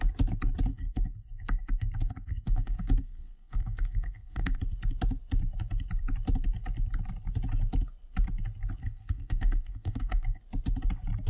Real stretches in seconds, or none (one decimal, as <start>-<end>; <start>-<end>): 0.0-0.7; 4.6-8.8; 10.4-11.3